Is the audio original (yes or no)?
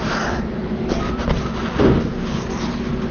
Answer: yes